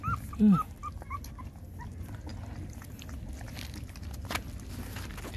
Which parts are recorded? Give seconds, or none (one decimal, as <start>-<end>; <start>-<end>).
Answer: 0.0-5.4